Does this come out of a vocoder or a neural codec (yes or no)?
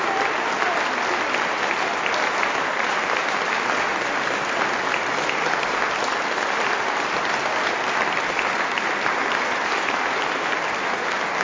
no